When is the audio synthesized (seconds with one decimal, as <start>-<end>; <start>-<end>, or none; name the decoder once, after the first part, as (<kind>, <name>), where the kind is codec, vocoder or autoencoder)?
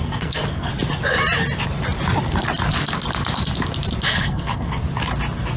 0.0-0.7 (codec, SNAC); 4.1-4.8